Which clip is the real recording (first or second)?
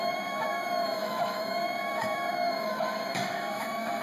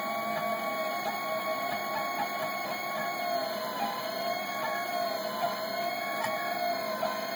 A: second